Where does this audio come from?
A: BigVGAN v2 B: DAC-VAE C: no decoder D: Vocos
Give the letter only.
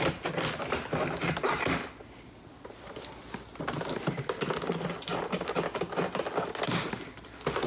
C